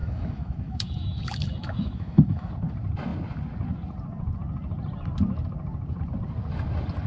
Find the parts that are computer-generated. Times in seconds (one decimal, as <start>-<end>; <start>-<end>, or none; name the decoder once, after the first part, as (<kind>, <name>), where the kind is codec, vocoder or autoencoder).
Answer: 0.0-2.5 (autoencoder, DAC-VAE)